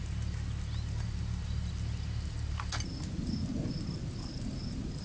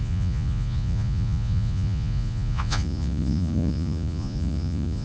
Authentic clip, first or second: first